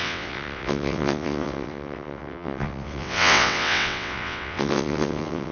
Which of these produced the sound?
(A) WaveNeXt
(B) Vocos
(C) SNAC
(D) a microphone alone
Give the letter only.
A